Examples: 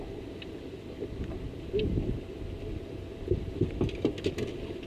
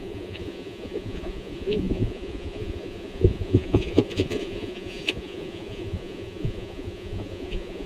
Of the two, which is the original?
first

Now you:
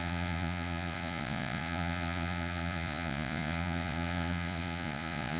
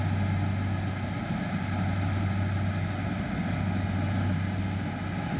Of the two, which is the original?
second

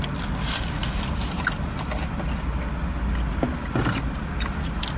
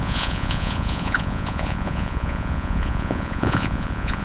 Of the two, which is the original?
first